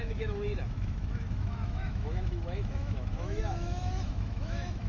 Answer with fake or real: fake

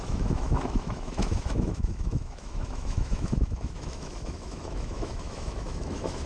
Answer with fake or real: fake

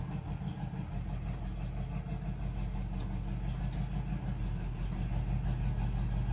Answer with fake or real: real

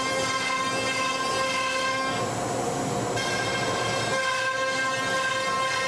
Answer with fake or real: real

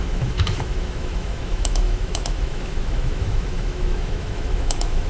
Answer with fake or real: fake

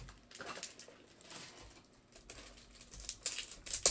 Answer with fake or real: real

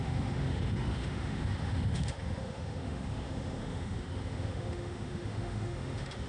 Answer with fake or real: fake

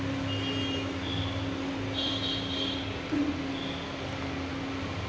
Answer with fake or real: real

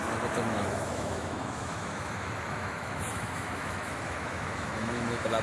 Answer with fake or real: fake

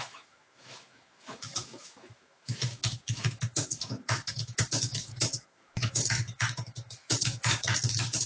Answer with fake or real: fake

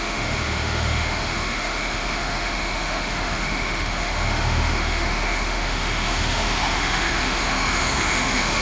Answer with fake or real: fake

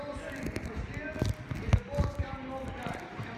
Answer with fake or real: real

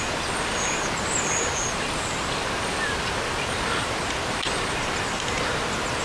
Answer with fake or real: real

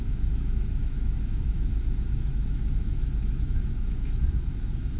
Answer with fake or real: fake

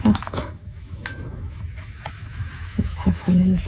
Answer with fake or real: fake